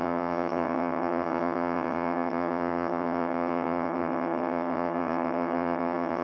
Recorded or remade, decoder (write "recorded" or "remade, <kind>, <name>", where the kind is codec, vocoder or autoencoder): remade, vocoder, HiFi-GAN